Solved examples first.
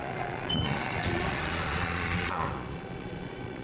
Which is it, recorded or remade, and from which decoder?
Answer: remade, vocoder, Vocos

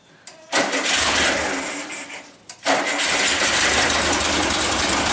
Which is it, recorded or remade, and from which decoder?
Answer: recorded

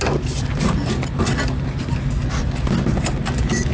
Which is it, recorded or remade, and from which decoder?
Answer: recorded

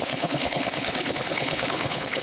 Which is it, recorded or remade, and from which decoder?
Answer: remade, codec, HILCodec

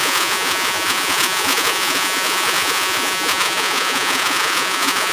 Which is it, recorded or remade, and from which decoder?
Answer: remade, vocoder, Vocos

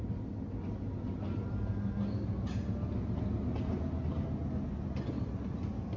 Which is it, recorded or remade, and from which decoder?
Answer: recorded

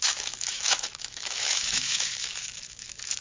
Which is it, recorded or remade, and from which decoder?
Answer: remade, autoencoder, DAC-VAE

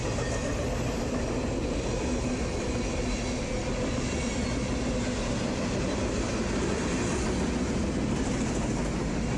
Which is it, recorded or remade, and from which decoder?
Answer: recorded